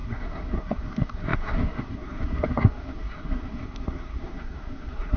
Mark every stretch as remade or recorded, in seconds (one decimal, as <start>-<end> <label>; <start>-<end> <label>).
0.0-5.2 remade